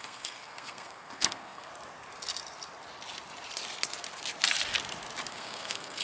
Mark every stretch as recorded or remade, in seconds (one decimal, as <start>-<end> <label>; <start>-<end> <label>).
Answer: 0.0-1.7 remade; 1.7-5.3 recorded; 5.3-6.0 remade